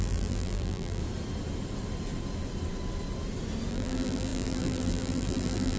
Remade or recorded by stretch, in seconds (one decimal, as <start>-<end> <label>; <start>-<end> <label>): 0.0-1.0 remade; 1.0-3.7 recorded; 3.7-5.8 remade